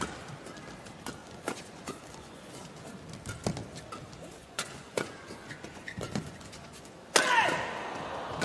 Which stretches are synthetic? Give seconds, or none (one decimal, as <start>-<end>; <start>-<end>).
1.2-2.6; 4.4-6.9